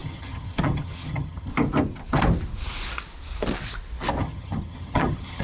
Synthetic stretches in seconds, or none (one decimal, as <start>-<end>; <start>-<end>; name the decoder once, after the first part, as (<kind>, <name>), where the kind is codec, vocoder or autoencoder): 0.0-1.5 (vocoder, HiFi-GAN); 4.2-5.4